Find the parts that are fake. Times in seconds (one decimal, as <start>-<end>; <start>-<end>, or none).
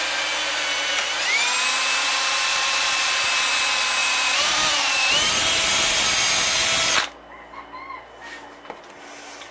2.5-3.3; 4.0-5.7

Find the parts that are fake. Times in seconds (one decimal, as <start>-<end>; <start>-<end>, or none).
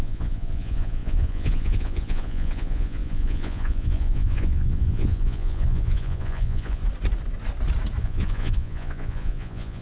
0.0-6.8; 8.0-9.8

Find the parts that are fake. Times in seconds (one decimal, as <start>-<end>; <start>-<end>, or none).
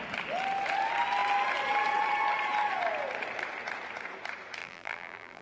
4.6-5.4